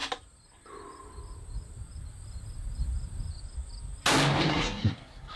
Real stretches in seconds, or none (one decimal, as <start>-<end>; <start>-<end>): 0.0-4.5